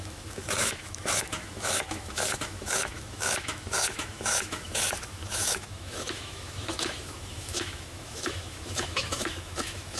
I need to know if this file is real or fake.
fake